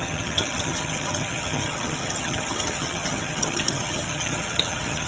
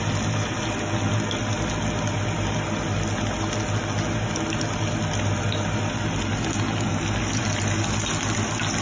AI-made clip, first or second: first